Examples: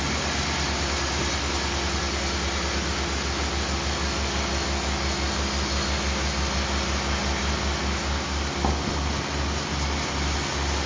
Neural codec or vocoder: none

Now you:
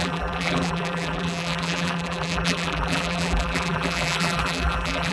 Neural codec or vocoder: vocoder, BigVGAN v2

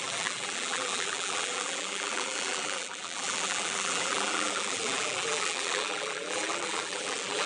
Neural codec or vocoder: vocoder, BigVGAN v2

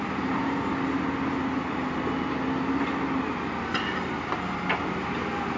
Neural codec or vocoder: none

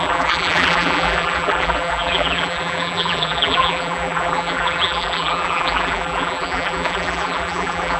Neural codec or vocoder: vocoder, BigVGAN v2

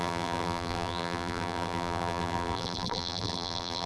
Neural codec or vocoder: vocoder, BigVGAN v2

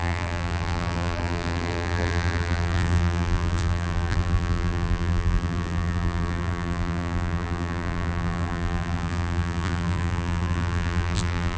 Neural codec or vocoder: vocoder, BigVGAN v2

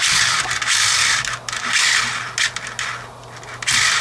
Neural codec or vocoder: none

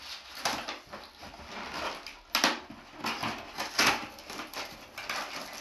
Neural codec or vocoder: none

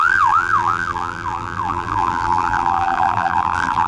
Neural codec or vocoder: vocoder, BigVGAN v2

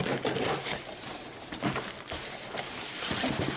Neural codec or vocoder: vocoder, BigVGAN v2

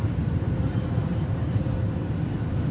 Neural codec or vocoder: vocoder, BigVGAN v2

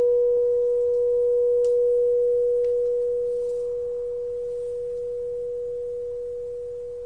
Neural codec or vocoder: none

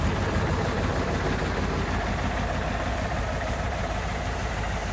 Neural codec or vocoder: none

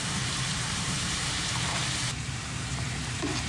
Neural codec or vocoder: vocoder, BigVGAN v2